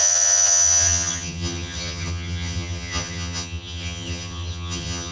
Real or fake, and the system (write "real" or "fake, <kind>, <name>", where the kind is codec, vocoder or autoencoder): fake, vocoder, HiFi-GAN